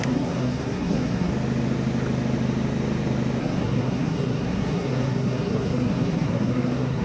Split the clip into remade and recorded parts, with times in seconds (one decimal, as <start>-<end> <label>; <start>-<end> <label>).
0.0-1.3 remade; 1.3-3.4 recorded; 3.4-7.0 remade